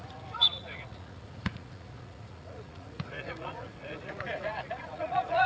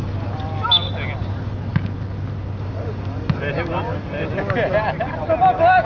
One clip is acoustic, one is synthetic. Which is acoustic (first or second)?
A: second